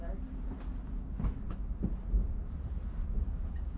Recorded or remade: recorded